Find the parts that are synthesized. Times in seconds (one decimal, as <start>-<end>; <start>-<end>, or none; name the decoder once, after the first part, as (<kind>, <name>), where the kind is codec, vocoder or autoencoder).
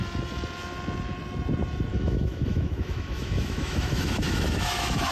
1.9-5.1 (autoencoder, DAC-VAE)